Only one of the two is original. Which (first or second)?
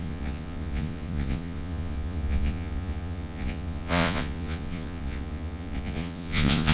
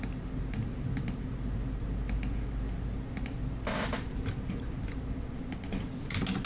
second